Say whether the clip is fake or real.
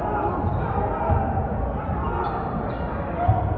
real